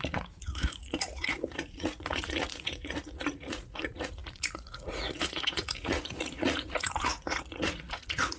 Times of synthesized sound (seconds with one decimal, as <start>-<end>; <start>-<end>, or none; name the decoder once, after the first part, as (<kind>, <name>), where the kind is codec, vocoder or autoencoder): 0.0-8.4 (vocoder, Vocos)